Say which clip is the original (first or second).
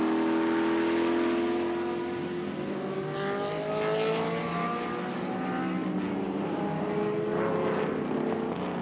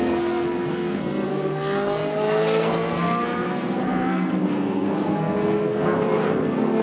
first